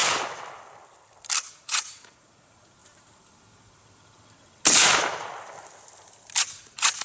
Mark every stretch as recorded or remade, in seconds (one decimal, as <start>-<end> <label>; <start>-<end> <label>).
0.0-1.5 recorded; 1.5-2.8 remade; 2.8-6.4 recorded; 6.4-7.0 remade